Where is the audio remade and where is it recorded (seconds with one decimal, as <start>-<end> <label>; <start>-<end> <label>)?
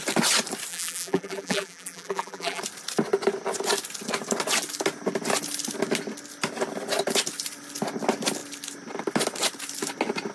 0.0-0.7 recorded; 0.7-2.6 remade; 2.6-10.3 recorded